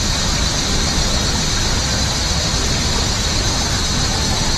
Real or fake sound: fake